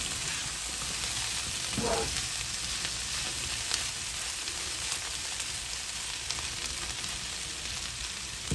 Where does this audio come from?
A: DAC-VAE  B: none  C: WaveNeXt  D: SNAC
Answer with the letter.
B